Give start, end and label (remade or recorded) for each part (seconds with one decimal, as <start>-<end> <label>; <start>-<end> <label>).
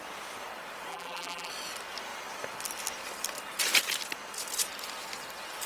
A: 0.0-0.9 recorded; 0.9-1.5 remade; 1.5-5.7 recorded